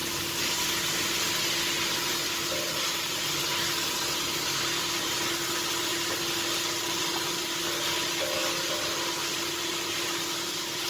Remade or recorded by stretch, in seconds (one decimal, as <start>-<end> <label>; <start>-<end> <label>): 0.0-4.8 recorded; 4.8-5.9 remade; 5.9-7.0 recorded; 7.0-8.4 remade; 8.4-9.1 recorded; 9.1-10.9 remade